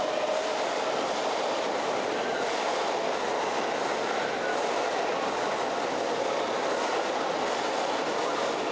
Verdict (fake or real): real